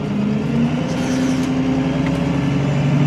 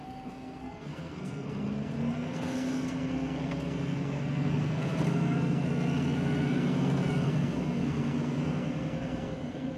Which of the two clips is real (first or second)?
first